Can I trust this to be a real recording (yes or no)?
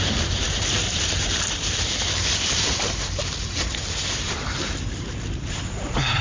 no